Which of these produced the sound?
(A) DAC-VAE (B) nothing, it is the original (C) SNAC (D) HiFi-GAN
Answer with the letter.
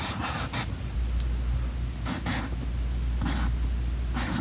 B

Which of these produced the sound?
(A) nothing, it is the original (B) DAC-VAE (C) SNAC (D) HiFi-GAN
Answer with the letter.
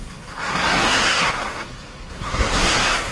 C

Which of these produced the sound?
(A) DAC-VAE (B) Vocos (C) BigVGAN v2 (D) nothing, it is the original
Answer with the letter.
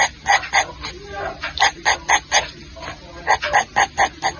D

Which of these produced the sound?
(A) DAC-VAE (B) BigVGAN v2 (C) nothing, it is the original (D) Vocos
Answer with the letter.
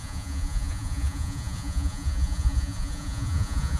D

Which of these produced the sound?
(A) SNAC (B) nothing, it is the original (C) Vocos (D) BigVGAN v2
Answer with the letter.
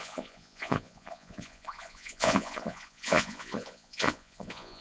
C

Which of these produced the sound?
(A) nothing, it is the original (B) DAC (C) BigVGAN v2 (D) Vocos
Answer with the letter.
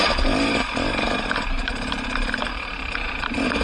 C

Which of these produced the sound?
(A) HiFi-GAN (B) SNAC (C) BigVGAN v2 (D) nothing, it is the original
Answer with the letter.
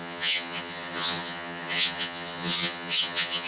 A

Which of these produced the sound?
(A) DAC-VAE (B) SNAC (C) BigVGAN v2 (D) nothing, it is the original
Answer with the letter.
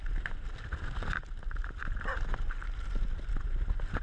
D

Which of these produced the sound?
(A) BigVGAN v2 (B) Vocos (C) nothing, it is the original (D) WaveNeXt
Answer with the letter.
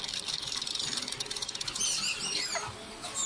C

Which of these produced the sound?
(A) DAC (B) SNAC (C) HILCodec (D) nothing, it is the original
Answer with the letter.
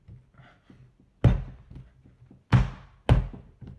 D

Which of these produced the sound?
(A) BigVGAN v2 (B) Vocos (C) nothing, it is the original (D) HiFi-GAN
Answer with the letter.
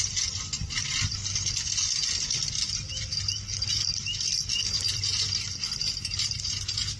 C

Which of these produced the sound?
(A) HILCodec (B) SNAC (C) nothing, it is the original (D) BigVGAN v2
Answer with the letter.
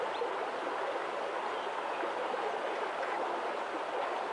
C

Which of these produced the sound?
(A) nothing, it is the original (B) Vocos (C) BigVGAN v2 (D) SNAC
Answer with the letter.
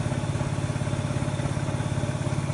A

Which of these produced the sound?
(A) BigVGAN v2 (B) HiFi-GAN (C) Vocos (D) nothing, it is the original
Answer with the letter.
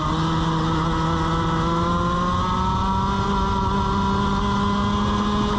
D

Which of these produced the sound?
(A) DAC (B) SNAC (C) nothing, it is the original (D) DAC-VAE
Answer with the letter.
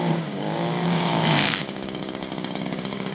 A